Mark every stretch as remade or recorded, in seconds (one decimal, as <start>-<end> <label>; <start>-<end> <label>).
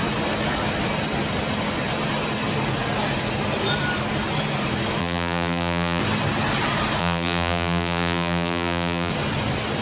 0.0-5.0 recorded; 5.0-6.0 remade; 6.0-7.0 recorded; 7.0-9.1 remade; 9.1-9.8 recorded